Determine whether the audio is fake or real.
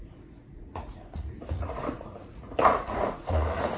fake